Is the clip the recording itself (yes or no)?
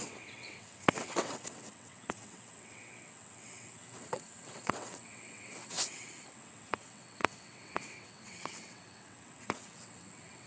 no